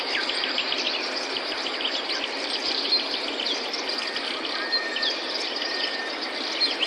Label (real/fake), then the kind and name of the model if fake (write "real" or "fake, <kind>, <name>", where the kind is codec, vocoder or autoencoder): real